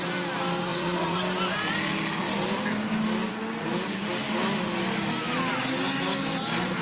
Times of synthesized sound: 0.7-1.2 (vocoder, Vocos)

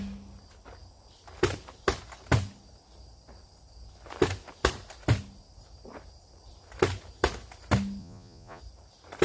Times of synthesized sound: 8.0-8.6 (vocoder, Vocos)

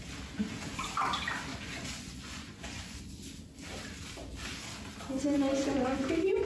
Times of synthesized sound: 1.5-3.0 (vocoder, Vocos)

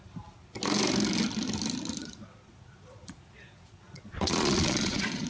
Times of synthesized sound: 2.0-5.3 (vocoder, Vocos)

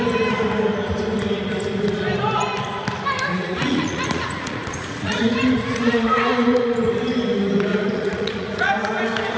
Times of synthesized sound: 3.3-6.9 (vocoder, Vocos); 7.7-8.7

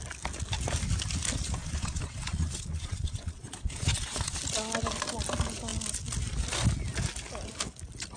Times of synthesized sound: 1.6-4.4 (vocoder, Vocos)

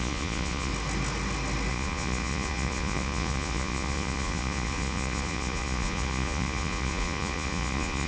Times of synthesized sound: 0.0-0.7 (vocoder, Vocos); 1.7-8.1